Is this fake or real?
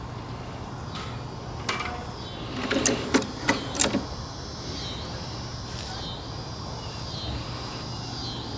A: real